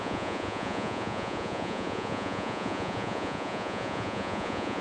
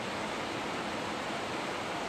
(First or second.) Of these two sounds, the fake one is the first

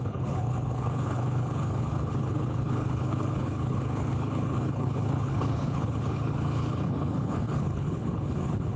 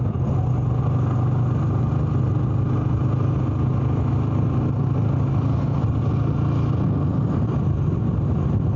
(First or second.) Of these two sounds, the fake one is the first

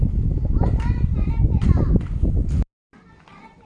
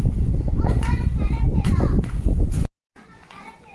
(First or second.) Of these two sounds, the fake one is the second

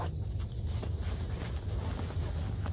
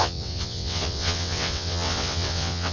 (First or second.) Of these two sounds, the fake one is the second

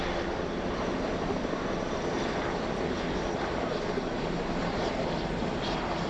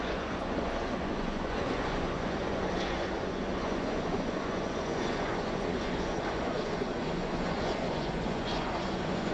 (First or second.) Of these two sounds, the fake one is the second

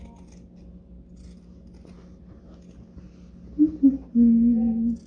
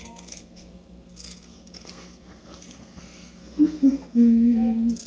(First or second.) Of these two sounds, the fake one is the second